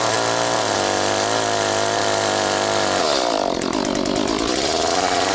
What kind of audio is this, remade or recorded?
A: recorded